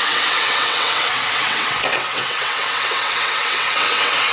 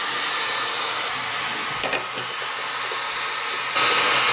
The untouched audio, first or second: second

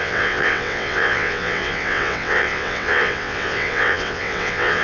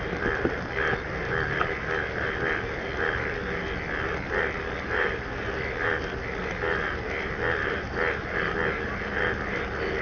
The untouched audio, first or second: second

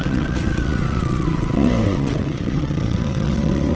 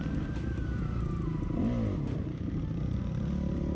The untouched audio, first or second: second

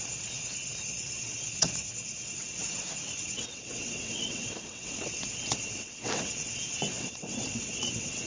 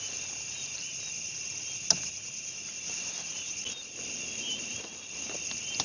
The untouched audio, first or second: second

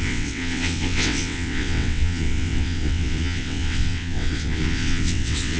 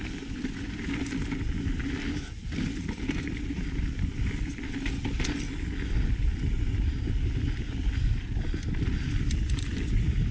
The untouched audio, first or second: second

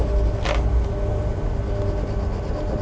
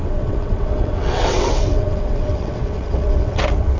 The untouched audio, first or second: first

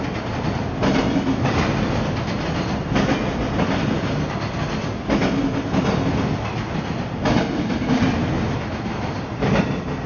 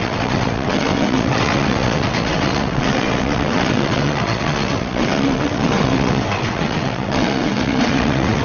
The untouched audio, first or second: first